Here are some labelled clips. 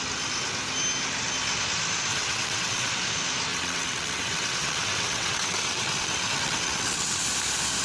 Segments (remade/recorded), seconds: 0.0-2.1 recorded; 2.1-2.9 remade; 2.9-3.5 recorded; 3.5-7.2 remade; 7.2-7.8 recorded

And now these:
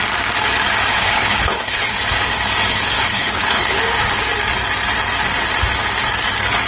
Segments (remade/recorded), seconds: 0.0-0.9 recorded; 0.9-2.0 remade; 2.0-2.7 recorded; 2.7-3.8 remade; 3.8-6.7 recorded

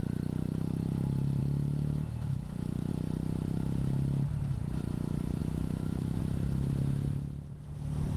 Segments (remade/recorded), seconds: 0.0-1.4 recorded; 1.4-2.9 remade; 2.9-5.4 recorded; 5.4-6.2 remade; 6.2-8.2 recorded

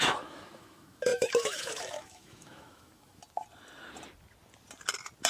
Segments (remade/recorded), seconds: 0.0-3.2 remade; 3.2-5.3 recorded

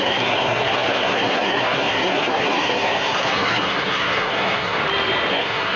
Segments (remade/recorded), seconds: 0.0-4.8 remade; 4.8-5.3 recorded; 5.3-5.8 remade

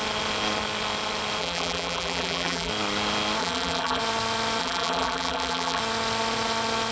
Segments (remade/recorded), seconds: 0.0-1.4 recorded; 1.4-2.7 remade; 2.7-3.4 recorded; 3.4-4.0 remade; 4.0-4.6 recorded; 4.6-5.8 remade; 5.8-6.9 recorded

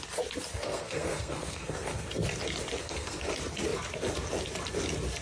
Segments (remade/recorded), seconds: 0.0-0.5 recorded; 0.5-2.1 remade; 2.1-2.8 recorded; 2.8-3.3 remade; 3.3-5.2 recorded